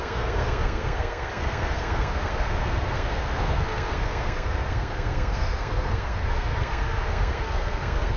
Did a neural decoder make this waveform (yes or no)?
yes